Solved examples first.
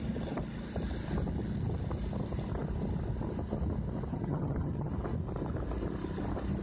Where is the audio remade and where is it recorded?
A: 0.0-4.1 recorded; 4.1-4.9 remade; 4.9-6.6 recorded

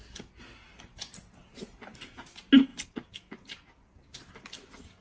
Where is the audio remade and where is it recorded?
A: 0.0-5.0 recorded

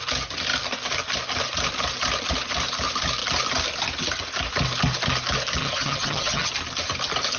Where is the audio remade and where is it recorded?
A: 0.0-5.6 recorded; 5.6-6.5 remade; 6.5-7.4 recorded

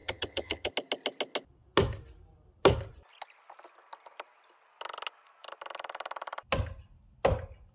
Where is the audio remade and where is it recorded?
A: 0.0-0.7 remade; 0.7-7.7 recorded

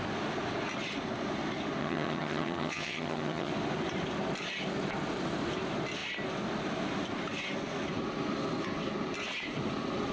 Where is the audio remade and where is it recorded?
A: 0.0-1.8 recorded; 1.8-3.5 remade; 3.5-10.1 recorded

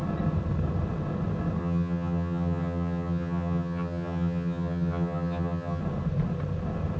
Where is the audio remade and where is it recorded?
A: 0.0-1.6 recorded; 1.6-5.8 remade; 5.8-7.0 recorded

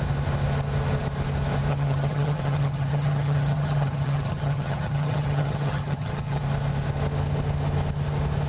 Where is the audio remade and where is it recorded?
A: 0.0-1.7 recorded; 1.7-6.4 remade; 6.4-8.5 recorded

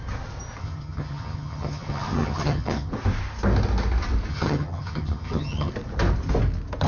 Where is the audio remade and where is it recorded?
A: 0.0-0.6 recorded; 0.6-2.9 remade; 2.9-4.3 recorded; 4.3-5.7 remade; 5.7-6.9 recorded